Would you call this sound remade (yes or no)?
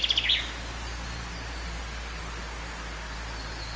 no